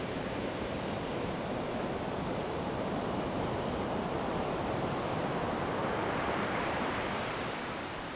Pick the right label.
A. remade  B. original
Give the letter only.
A